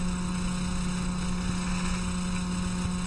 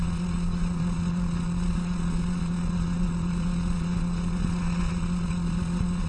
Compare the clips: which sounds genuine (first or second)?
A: first